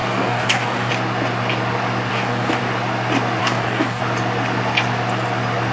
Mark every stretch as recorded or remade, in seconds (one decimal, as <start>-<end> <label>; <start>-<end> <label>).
0.0-0.9 remade; 0.9-2.1 recorded; 2.1-2.6 remade; 2.6-3.4 recorded; 3.4-4.0 remade; 4.0-5.7 recorded